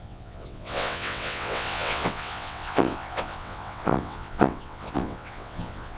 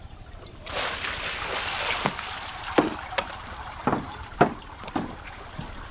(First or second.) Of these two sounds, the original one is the second